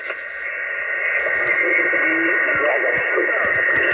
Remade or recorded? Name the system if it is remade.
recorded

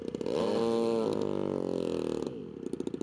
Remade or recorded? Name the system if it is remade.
recorded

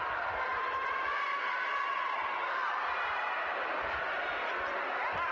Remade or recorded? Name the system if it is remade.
remade, vocoder, BigVGAN v2